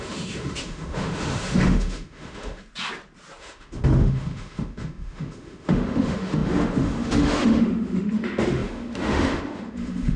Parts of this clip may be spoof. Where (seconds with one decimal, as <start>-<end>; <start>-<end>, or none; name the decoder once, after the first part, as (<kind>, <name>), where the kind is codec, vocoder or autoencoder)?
0.0-2.6 (autoencoder, DAC-VAE); 3.4-10.2